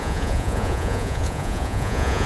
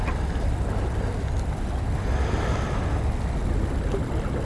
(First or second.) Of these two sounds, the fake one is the first